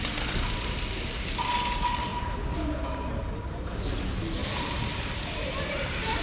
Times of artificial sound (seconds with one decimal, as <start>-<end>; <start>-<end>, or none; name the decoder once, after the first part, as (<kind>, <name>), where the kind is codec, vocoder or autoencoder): 4.4-5.0 (vocoder, BigVGAN v2)